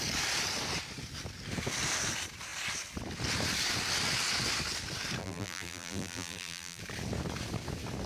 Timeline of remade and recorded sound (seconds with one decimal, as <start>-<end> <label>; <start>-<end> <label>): 0.0-5.2 recorded; 5.2-6.8 remade; 6.8-8.1 recorded